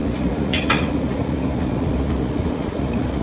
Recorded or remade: remade